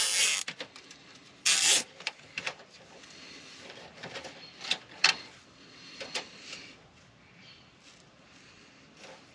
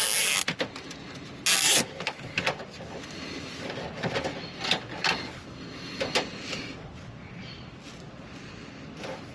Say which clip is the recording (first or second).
second